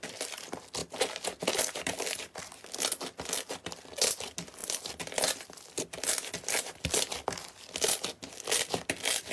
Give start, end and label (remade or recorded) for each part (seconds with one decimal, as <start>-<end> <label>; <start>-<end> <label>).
0.0-0.8 recorded; 0.8-2.4 remade; 2.4-4.6 recorded; 4.6-6.9 remade; 6.9-9.3 recorded